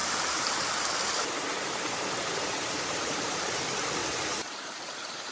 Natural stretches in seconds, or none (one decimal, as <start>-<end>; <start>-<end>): 0.0-2.7; 4.0-4.6

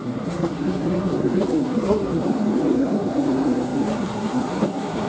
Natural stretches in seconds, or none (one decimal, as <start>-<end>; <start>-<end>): none